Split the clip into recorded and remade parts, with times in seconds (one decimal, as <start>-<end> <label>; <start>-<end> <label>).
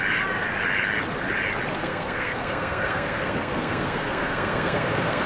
0.0-1.8 recorded; 1.8-5.3 remade